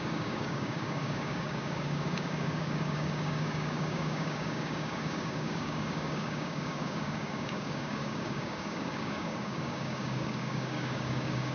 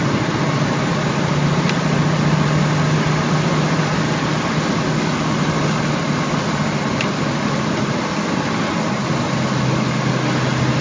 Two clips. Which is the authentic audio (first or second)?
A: second